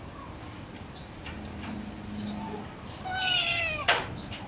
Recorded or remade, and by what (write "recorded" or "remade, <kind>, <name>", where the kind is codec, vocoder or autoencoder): recorded